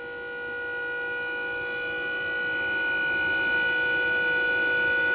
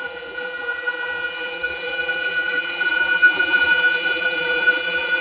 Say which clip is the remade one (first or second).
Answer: second